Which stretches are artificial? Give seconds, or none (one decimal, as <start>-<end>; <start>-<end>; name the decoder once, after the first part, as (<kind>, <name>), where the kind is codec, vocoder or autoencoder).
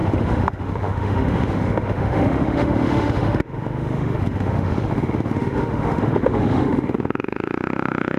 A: 0.0-8.2 (autoencoder, DAC-VAE)